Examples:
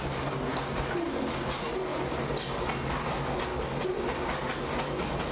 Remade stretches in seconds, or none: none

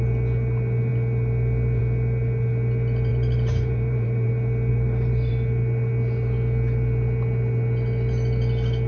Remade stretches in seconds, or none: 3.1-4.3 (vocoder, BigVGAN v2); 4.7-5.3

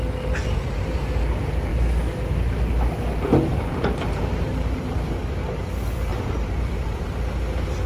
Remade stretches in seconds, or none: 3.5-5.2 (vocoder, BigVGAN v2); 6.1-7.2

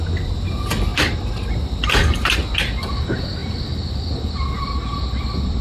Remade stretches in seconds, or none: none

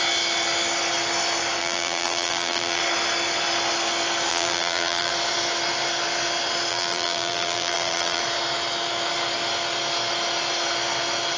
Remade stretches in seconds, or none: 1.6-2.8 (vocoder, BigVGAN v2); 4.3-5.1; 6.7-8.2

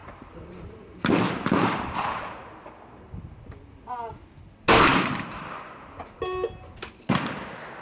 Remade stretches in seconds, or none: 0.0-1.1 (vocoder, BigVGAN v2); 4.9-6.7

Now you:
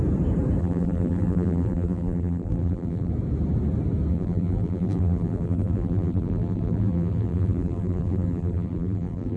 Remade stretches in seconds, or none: 0.6-3.1 (vocoder, BigVGAN v2); 4.1-9.4